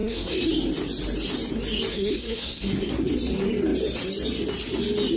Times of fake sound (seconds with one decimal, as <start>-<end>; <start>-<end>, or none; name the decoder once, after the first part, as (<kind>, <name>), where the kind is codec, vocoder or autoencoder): 0.0-0.5 (codec, SNAC); 1.9-3.1